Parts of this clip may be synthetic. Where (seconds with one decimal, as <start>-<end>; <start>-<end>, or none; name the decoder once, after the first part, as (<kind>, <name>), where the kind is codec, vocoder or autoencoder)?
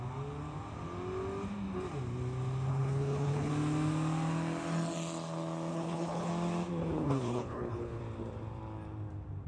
2.7-3.5 (codec, HILCodec); 5.7-6.3; 6.8-8.0